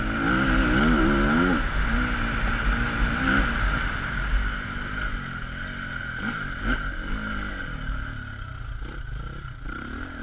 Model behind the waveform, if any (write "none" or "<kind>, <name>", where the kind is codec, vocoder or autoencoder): none